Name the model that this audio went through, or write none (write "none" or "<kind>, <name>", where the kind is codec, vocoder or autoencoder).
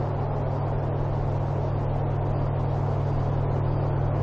none